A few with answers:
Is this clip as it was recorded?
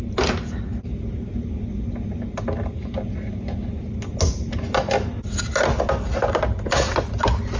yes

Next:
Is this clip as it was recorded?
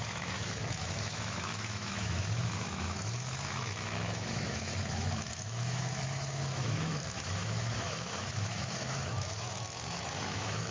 no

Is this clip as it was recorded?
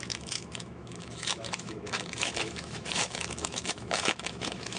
no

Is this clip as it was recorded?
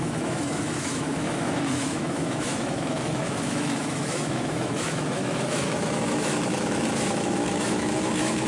no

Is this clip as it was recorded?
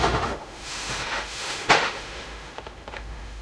no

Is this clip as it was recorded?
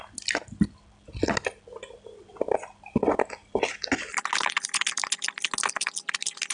yes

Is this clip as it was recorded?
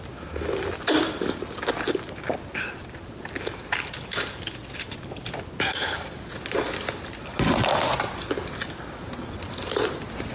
yes